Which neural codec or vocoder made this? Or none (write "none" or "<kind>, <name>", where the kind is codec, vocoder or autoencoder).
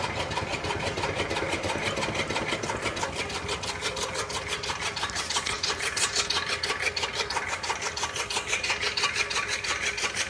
none